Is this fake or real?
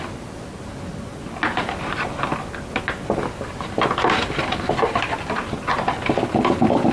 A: real